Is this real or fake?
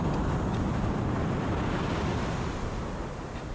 real